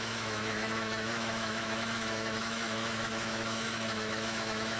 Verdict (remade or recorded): remade